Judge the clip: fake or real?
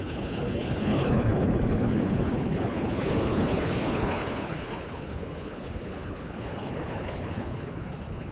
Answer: fake